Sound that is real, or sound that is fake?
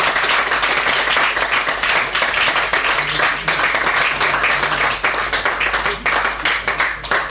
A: real